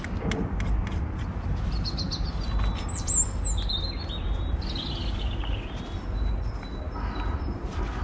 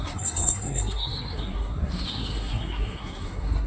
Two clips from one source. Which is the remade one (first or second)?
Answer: second